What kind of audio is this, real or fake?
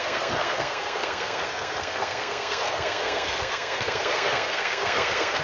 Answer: fake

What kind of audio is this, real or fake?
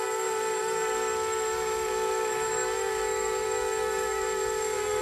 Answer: fake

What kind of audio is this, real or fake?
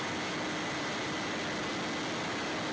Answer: real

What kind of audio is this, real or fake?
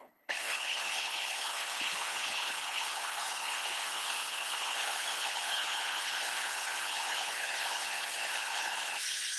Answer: fake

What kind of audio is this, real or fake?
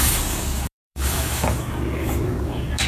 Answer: fake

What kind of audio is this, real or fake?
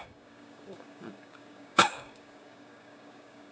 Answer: fake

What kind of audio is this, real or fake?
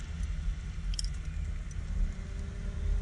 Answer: real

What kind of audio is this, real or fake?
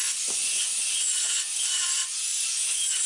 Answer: fake